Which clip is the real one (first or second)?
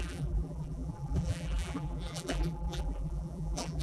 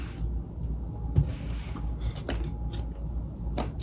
second